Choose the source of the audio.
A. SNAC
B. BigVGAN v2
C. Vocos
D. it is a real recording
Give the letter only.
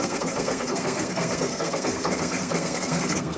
A